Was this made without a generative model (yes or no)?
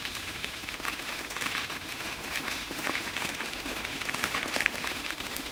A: no